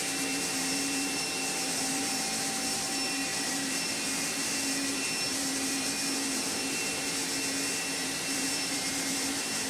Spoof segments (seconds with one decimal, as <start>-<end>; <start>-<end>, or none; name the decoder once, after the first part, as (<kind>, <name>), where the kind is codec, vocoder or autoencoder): 0.0-7.2 (vocoder, BigVGAN v2); 7.9-9.7